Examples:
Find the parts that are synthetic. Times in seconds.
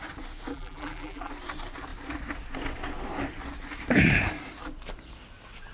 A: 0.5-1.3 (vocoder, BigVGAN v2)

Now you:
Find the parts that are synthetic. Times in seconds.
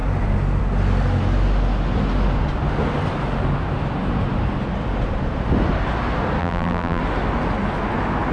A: 6.4-7.0 (vocoder, BigVGAN v2)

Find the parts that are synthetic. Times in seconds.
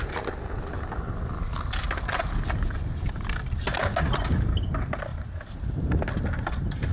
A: none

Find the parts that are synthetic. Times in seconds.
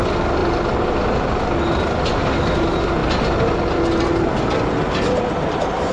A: none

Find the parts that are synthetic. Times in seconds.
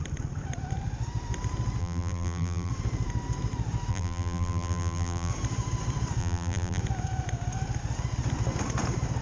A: 1.8-2.7 (vocoder, BigVGAN v2); 3.9-5.3; 6.2-6.8